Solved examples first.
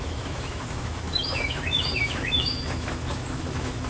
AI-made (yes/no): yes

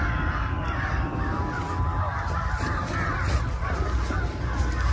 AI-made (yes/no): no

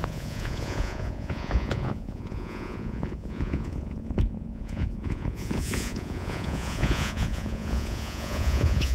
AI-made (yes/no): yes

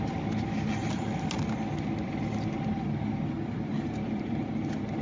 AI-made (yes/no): no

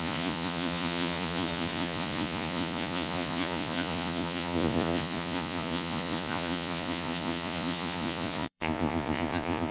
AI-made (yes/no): yes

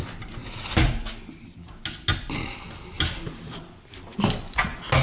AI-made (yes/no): no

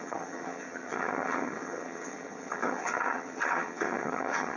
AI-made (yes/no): yes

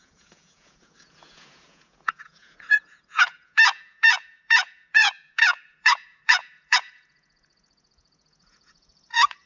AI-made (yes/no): yes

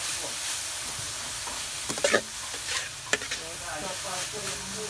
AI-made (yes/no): no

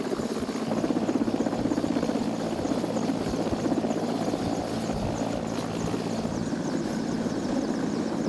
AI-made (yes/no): no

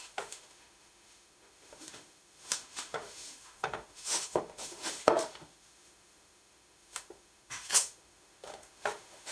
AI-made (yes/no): yes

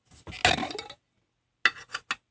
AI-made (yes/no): no